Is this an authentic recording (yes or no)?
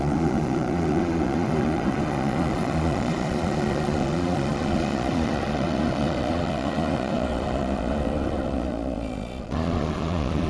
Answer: no